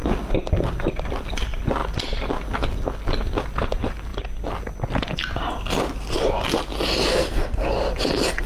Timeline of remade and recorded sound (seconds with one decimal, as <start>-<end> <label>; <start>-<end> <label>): 0.0-7.1 recorded; 7.1-7.7 remade; 7.7-8.5 recorded